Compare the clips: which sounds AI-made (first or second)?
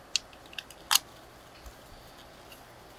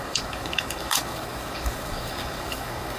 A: second